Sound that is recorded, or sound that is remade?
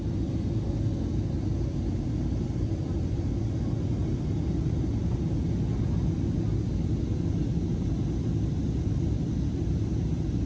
recorded